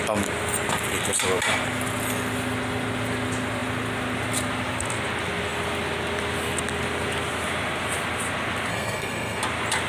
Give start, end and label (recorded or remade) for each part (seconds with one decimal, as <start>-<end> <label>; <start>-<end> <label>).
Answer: 0.0-8.7 recorded; 8.7-9.4 remade; 9.4-9.9 recorded

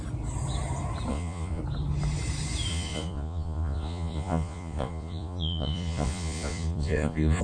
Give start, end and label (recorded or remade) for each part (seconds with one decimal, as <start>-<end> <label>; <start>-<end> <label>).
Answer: 0.0-1.1 recorded; 1.1-1.6 remade; 1.6-2.7 recorded; 2.7-7.4 remade

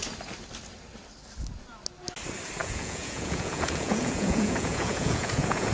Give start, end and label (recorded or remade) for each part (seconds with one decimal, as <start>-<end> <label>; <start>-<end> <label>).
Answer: 0.0-2.6 recorded; 2.6-5.7 remade

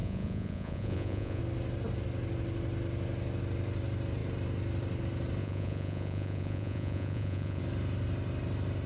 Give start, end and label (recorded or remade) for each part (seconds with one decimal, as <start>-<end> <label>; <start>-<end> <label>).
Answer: 0.0-1.4 remade; 1.4-5.4 recorded; 5.4-7.6 remade; 7.6-8.9 recorded